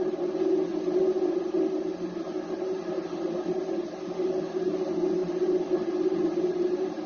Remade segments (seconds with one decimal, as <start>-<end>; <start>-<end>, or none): none